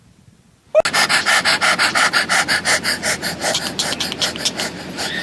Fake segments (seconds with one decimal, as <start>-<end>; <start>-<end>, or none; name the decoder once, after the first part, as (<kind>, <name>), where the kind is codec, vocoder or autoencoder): none